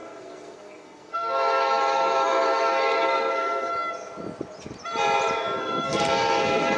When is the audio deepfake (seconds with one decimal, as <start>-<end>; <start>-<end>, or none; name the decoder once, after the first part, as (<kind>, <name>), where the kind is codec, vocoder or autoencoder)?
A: 0.0-3.7 (codec, SNAC); 5.6-6.8